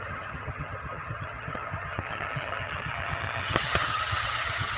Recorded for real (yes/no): no